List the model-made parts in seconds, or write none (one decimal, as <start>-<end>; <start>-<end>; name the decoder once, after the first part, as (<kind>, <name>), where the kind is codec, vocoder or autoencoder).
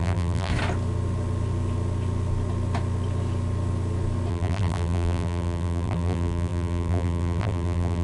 0.0-0.5 (vocoder, BigVGAN v2); 4.3-8.0